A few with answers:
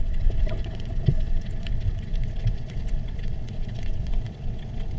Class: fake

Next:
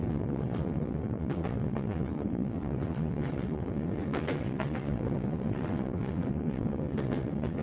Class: fake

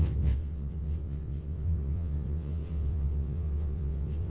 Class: fake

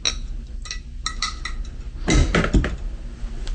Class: real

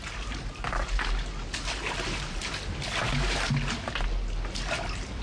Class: real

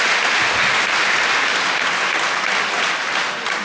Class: real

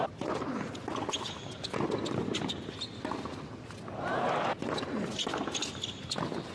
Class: real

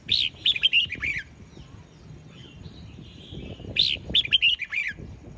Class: real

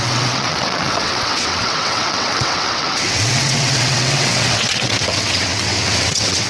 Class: fake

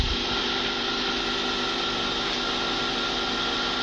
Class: real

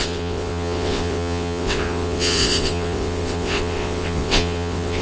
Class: fake